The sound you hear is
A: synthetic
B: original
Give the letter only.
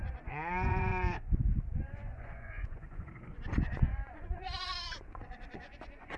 A